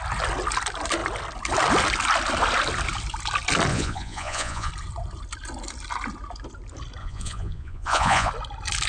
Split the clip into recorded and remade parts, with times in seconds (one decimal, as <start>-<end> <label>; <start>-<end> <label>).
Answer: 0.0-3.7 recorded; 3.7-4.7 remade; 4.7-7.0 recorded; 7.0-8.3 remade; 8.3-8.9 recorded